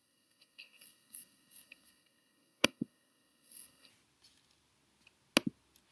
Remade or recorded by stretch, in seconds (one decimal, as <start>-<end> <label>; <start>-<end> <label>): 0.0-3.9 remade; 3.9-5.9 recorded